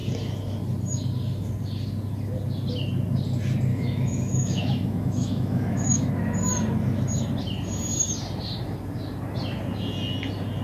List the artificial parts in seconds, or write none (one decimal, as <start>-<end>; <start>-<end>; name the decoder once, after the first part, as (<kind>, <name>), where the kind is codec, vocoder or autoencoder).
3.7-6.1 (autoencoder, DAC-VAE)